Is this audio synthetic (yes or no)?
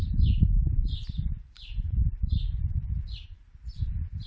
yes